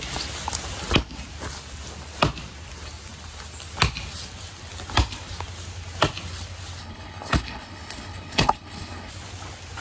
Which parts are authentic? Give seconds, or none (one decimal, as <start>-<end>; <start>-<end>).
0.0-6.8; 9.1-9.8